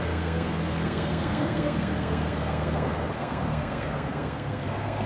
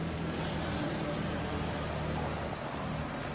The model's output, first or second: first